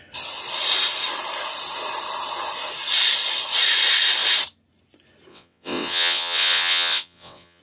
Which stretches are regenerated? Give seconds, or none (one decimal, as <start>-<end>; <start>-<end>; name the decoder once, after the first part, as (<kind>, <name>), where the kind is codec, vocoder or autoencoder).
5.3-7.6 (vocoder, WaveNeXt)